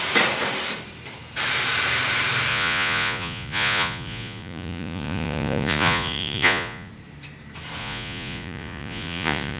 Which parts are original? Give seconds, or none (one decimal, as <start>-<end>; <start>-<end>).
0.0-2.5; 6.9-7.8